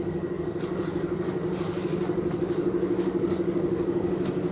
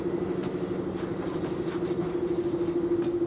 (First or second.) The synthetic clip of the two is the first